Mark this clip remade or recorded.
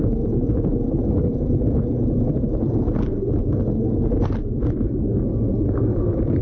recorded